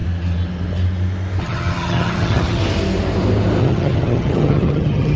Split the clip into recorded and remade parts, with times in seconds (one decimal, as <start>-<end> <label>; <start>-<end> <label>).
0.0-1.4 recorded; 1.4-2.6 remade; 2.6-3.6 recorded; 3.6-5.2 remade